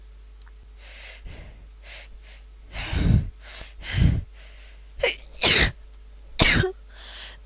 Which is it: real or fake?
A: real